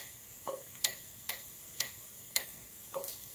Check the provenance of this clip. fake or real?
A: fake